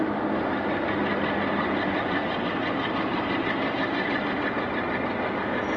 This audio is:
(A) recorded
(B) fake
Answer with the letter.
A